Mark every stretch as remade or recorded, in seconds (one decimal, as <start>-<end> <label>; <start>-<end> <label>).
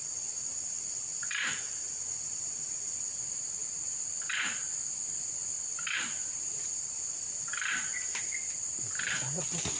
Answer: 0.0-9.8 recorded